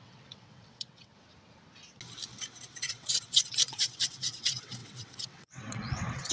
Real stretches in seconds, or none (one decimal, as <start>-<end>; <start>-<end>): 1.1-2.7